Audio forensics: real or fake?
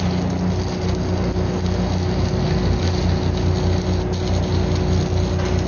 real